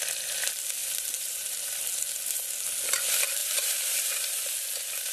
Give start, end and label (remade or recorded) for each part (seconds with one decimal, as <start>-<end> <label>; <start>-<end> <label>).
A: 0.0-0.8 recorded; 0.8-1.8 remade; 1.8-3.4 recorded; 3.4-4.4 remade; 4.4-5.1 recorded